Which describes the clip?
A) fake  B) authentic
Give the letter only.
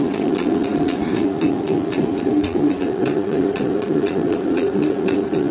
A